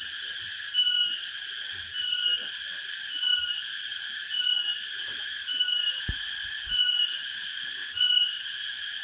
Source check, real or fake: real